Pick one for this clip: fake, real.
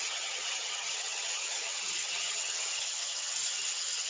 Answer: fake